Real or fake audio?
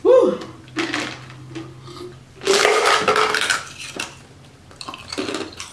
real